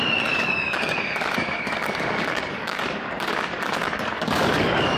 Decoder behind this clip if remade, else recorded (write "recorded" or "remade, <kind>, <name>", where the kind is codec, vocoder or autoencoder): remade, codec, DAC